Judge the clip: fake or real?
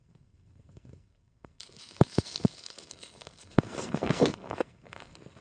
fake